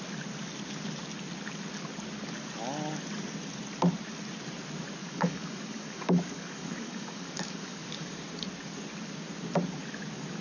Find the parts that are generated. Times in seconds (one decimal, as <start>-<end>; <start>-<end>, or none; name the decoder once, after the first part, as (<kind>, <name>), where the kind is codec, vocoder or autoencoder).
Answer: 5.0-8.1 (codec, DAC)